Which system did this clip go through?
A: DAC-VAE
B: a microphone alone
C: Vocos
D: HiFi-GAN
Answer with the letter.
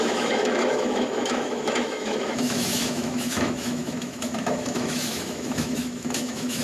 A